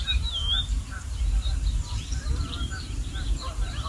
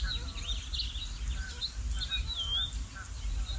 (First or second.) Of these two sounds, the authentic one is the second